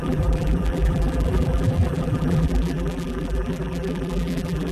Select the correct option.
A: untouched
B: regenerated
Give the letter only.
B